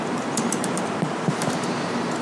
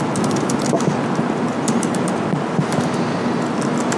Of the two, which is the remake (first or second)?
first